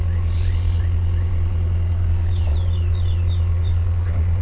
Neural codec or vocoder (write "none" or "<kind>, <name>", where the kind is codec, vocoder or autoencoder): vocoder, Vocos